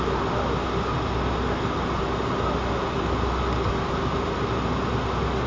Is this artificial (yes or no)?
no